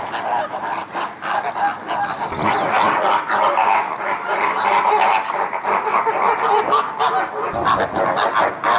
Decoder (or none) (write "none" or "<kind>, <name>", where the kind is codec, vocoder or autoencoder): none